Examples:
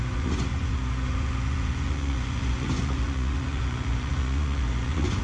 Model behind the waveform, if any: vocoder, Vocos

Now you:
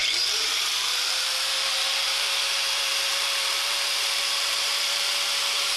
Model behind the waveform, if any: vocoder, BigVGAN v2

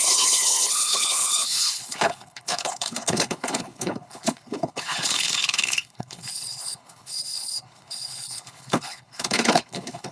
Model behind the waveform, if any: codec, HILCodec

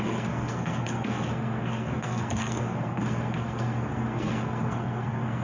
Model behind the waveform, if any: codec, SNAC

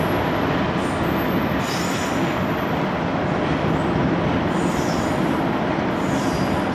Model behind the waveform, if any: none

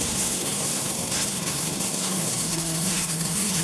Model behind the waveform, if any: codec, SNAC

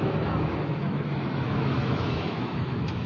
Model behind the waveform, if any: autoencoder, DAC-VAE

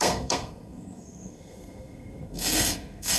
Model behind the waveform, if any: codec, SNAC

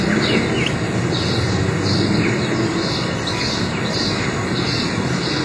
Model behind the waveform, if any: none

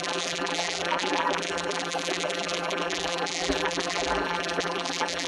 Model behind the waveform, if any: vocoder, BigVGAN v2